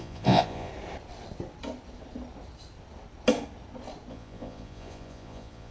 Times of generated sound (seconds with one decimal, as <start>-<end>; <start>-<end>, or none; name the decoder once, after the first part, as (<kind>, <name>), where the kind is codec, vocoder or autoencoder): 0.0-0.7 (vocoder, Vocos); 4.1-5.7